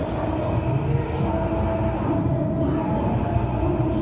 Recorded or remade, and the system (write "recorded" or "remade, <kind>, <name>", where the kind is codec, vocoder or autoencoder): recorded